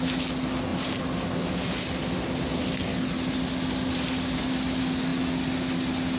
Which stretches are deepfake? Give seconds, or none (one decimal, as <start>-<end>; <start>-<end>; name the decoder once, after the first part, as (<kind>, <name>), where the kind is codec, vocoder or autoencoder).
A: none